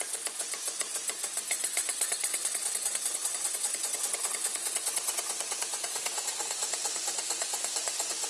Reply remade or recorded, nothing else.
remade